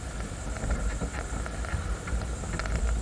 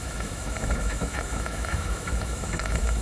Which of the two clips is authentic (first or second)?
first